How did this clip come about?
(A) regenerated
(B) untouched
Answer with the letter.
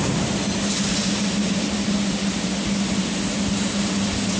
B